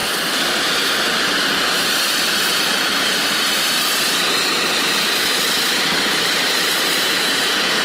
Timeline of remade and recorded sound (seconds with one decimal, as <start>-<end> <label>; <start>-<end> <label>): 0.0-2.4 recorded; 2.4-2.9 remade; 2.9-7.0 recorded; 7.0-7.8 remade